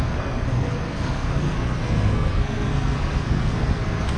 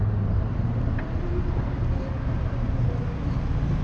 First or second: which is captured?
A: second